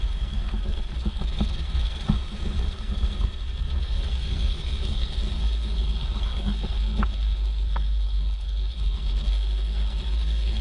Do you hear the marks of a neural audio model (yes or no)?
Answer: yes